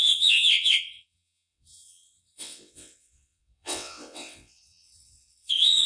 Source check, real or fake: fake